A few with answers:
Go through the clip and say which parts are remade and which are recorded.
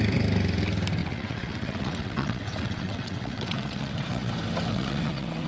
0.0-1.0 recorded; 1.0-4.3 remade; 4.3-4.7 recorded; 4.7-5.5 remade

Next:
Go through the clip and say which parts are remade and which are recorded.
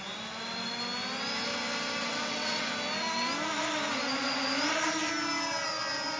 0.0-2.0 recorded; 2.0-2.7 remade; 2.7-6.2 recorded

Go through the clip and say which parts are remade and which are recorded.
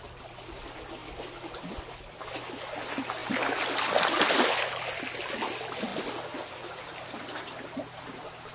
0.0-8.5 recorded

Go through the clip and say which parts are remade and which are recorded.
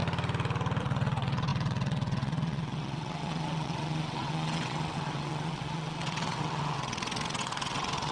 0.0-0.8 recorded; 0.8-8.1 remade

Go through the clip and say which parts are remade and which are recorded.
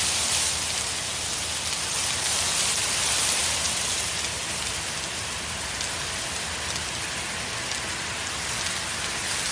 0.0-9.5 recorded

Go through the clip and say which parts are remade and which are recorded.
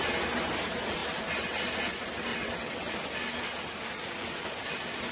0.0-2.3 recorded; 2.3-2.9 remade; 2.9-5.1 recorded